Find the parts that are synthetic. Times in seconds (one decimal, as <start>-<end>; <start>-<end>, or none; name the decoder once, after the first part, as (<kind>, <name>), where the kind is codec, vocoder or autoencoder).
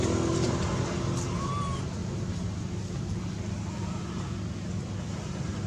none